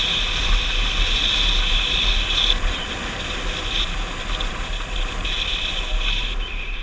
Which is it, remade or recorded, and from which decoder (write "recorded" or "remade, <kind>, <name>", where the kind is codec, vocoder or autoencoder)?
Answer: recorded